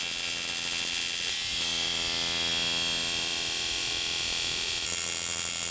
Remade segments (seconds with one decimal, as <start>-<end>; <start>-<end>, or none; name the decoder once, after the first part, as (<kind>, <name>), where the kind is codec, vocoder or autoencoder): none